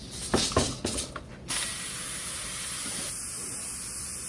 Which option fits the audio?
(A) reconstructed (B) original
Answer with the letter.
B